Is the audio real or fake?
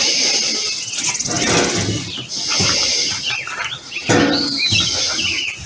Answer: real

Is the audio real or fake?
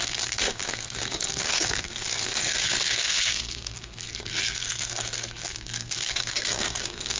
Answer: fake